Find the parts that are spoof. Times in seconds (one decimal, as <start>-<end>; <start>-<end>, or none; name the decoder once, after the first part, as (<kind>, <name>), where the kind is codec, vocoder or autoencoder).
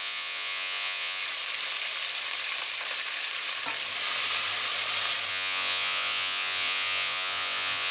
0.0-1.2 (vocoder, Vocos); 5.3-7.9